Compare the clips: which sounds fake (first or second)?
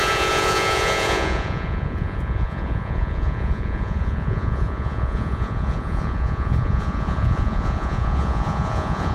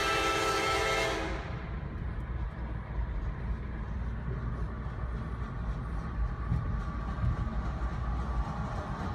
first